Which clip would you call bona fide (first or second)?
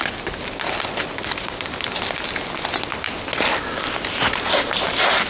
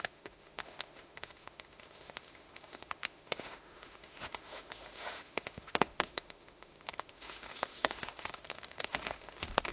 first